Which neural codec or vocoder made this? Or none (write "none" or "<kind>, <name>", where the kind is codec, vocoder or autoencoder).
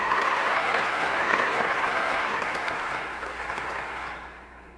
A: codec, SNAC